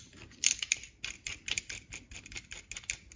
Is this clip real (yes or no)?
yes